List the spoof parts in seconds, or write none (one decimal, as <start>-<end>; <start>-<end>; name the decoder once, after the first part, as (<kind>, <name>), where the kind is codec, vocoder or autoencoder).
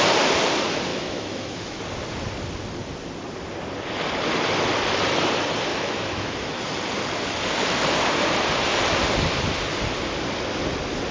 0.9-1.8 (autoencoder, DAC-VAE); 5.7-6.6